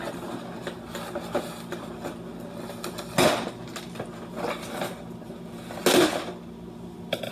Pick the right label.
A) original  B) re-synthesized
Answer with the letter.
A